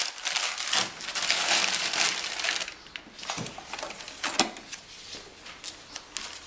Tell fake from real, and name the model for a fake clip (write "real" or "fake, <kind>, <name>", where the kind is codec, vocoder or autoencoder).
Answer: real